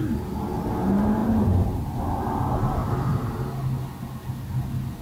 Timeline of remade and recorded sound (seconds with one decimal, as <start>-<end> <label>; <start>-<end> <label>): 0.0-1.2 recorded; 1.2-2.4 remade; 2.4-2.8 recorded; 2.8-3.6 remade; 3.6-5.0 recorded